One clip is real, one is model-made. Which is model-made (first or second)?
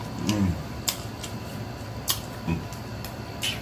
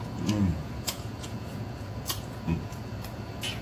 second